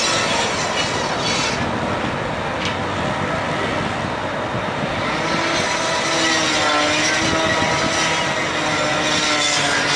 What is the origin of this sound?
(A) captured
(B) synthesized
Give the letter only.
A